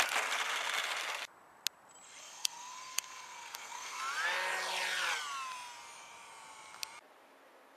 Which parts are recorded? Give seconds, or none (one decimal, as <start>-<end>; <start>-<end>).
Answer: 0.0-2.2; 4.0-7.8